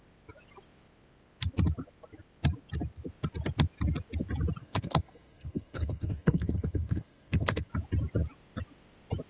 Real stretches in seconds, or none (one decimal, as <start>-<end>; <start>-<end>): 0.0-4.6; 7.7-9.3